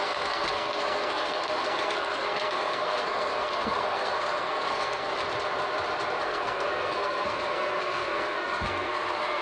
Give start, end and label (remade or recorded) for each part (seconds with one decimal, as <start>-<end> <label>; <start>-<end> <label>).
0.0-5.1 remade; 5.1-6.2 recorded; 6.2-9.4 remade